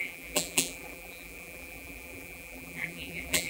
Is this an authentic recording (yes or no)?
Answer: no